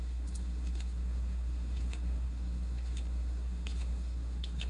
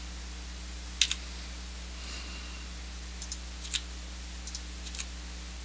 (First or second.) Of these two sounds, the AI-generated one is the first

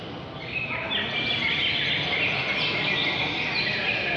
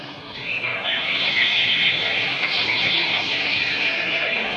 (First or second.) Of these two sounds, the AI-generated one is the second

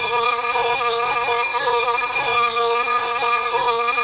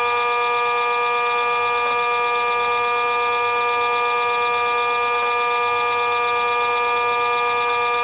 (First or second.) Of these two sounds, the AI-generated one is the first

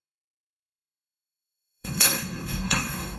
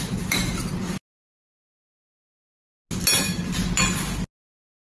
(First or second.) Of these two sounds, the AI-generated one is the first